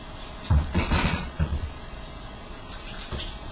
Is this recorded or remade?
remade